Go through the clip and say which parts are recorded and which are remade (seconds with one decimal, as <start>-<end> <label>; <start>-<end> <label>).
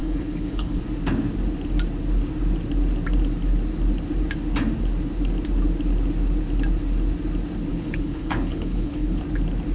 0.0-0.8 remade; 0.8-7.7 recorded; 7.7-9.2 remade; 9.2-9.7 recorded